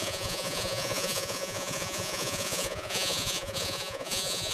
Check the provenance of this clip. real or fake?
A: fake